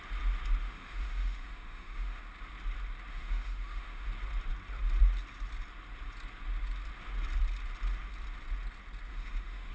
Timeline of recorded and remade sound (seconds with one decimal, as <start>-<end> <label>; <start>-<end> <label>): 0.0-0.6 recorded; 0.6-2.2 remade; 2.2-3.1 recorded; 3.1-4.1 remade; 4.1-9.1 recorded; 9.1-9.7 remade